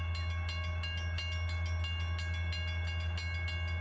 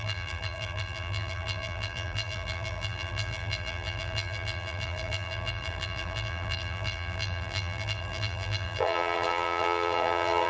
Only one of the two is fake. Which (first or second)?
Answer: second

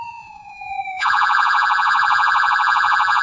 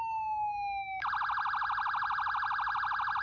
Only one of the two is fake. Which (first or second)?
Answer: first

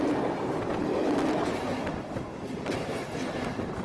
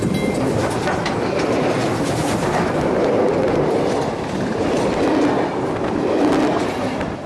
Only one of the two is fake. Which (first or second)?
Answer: first